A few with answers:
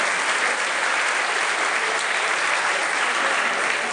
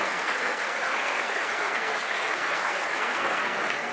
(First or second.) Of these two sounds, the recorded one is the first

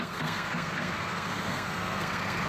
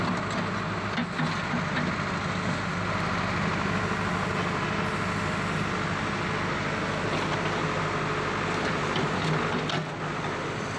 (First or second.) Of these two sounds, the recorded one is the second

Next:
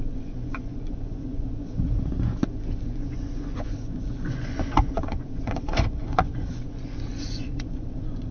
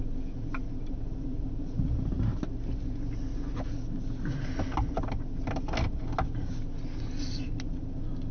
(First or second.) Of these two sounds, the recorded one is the second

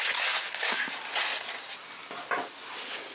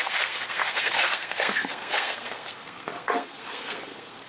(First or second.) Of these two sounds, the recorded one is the first